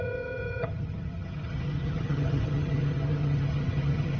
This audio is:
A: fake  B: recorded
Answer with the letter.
A